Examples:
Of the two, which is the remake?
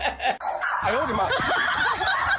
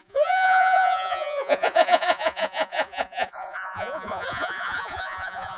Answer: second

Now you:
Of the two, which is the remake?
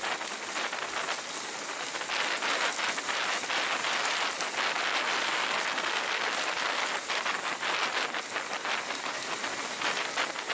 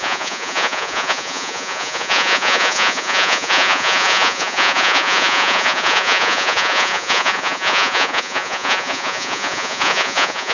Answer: second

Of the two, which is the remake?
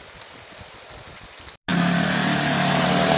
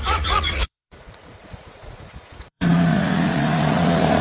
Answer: second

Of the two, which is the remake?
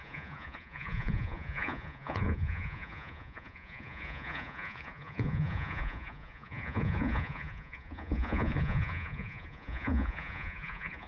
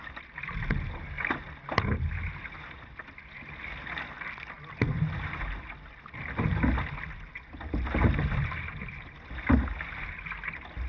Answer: first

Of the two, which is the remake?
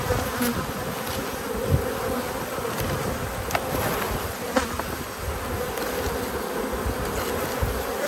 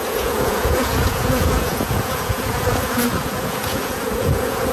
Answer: second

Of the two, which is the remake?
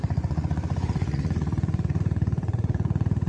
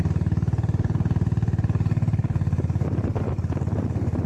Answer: first